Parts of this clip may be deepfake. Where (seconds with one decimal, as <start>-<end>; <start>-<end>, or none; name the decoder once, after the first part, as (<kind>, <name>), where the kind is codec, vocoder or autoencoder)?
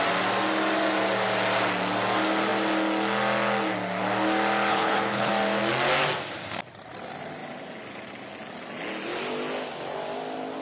4.7-5.3 (codec, HILCodec)